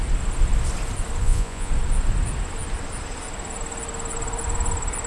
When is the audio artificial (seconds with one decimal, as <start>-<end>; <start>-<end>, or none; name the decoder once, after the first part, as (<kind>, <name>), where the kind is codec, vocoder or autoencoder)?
1.2-1.7 (vocoder, Vocos)